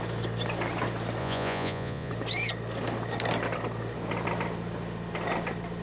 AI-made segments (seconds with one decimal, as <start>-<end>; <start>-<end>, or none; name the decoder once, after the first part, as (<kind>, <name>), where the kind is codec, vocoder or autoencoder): 1.2-2.1 (vocoder, Vocos)

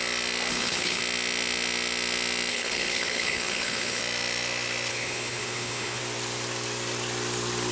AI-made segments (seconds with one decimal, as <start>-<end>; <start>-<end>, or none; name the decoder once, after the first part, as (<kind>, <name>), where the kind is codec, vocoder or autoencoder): 0.5-1.0 (codec, HILCodec); 2.5-4.0; 4.9-6.0

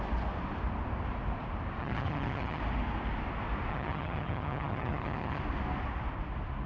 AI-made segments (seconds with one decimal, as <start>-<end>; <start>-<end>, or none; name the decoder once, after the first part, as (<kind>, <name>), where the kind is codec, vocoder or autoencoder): 1.8-2.6 (vocoder, HiFi-GAN); 3.7-5.4

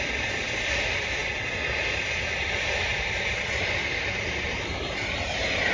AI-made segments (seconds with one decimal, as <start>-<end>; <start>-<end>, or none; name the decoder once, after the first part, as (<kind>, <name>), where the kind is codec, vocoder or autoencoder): 0.0-5.7 (vocoder, BigVGAN v2)

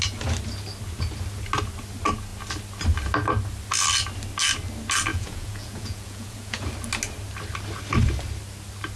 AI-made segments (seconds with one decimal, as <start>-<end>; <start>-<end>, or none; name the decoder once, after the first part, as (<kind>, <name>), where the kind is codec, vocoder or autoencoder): 5.1-6.7 (vocoder, Vocos)

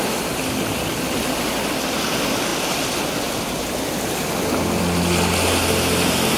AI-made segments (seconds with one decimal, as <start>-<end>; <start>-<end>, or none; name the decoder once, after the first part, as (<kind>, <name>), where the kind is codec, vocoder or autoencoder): none